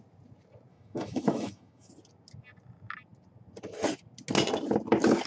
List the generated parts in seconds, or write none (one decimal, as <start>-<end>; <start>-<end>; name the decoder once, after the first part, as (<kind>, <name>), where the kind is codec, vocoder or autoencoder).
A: 0.7-1.9 (autoencoder, DAC-VAE)